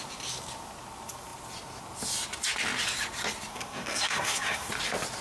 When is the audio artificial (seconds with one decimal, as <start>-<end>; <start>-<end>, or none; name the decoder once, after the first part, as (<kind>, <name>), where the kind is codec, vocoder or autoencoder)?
3.5-4.7 (codec, SNAC)